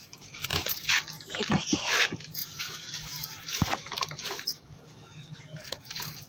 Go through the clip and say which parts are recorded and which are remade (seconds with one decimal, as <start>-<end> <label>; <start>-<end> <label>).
0.0-6.3 remade